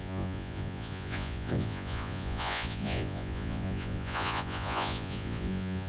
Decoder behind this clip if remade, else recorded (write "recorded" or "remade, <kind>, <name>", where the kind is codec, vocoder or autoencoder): remade, vocoder, Vocos